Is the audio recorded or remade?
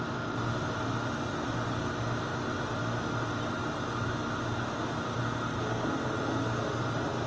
recorded